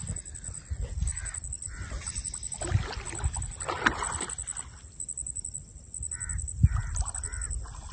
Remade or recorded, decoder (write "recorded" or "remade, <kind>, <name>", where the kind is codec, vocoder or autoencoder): recorded